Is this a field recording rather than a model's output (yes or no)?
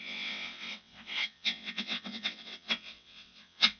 no